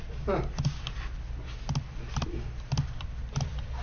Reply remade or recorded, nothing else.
recorded